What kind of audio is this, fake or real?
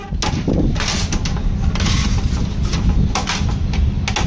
real